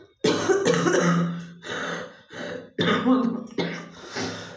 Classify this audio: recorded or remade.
recorded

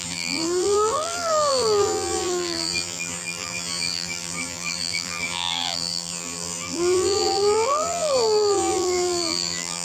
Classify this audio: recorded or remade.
remade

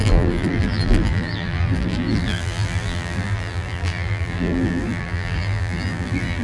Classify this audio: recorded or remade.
remade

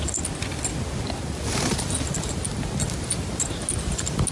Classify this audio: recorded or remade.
recorded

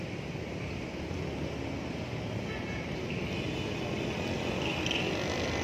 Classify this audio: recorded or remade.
recorded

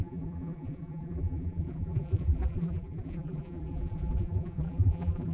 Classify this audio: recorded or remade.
remade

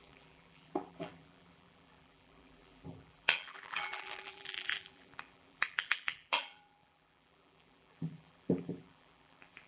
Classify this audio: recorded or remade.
remade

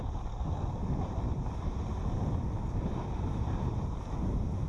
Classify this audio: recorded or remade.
recorded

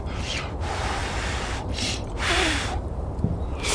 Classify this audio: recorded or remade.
remade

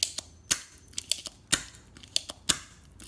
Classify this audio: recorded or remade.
recorded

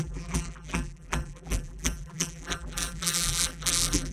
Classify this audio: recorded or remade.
remade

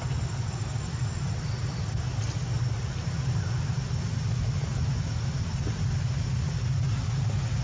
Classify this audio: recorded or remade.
remade